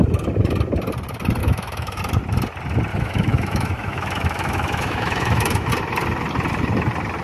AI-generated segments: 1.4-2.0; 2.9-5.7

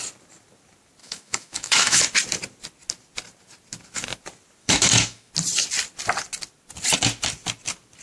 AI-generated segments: 1.0-2.0; 4.6-5.3